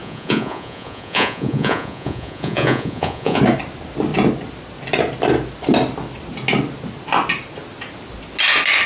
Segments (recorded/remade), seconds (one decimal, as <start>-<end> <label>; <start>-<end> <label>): 0.0-3.4 remade; 3.4-8.9 recorded